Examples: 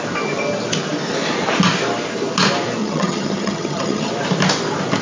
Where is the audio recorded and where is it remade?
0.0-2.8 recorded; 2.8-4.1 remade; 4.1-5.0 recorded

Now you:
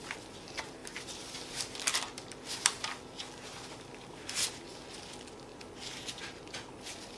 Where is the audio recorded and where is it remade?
0.0-7.2 recorded

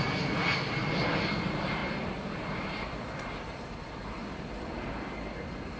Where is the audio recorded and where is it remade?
0.0-5.8 recorded

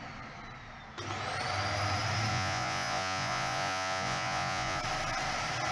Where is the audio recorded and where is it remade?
0.0-2.3 recorded; 2.3-4.8 remade; 4.8-5.7 recorded

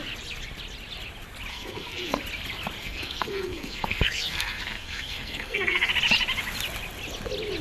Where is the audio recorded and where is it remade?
0.0-1.5 recorded; 1.5-2.2 remade; 2.2-2.8 recorded; 2.8-5.9 remade; 5.9-7.6 recorded

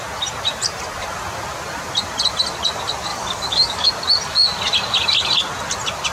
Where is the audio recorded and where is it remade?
0.0-3.1 recorded; 3.1-3.9 remade; 3.9-6.1 recorded